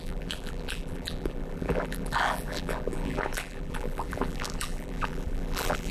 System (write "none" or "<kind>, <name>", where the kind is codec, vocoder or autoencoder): vocoder, BigVGAN v2